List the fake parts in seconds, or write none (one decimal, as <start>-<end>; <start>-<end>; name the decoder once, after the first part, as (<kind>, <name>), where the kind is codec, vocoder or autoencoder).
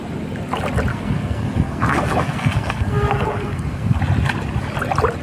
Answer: 0.9-4.0 (codec, SNAC)